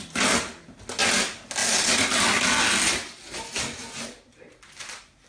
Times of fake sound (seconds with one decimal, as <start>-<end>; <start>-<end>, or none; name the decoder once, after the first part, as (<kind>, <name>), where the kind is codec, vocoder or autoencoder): none